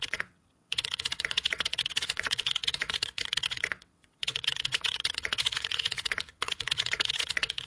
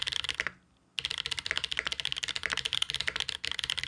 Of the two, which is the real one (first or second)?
second